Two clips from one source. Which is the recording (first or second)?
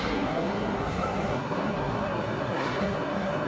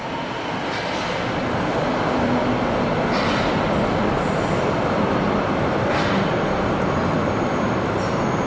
second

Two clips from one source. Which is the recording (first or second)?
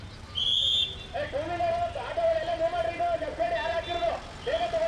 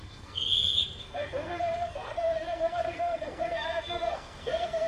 first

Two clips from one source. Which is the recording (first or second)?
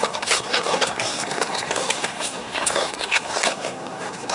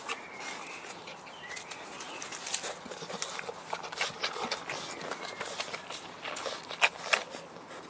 second